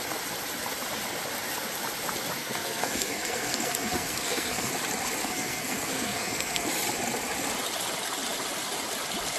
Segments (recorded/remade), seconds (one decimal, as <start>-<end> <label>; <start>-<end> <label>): 0.0-2.4 recorded; 2.4-4.7 remade; 4.7-5.2 recorded; 5.2-6.7 remade; 6.7-9.4 recorded